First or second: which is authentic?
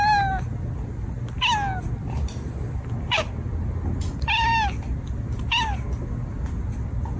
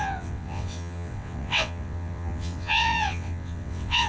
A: first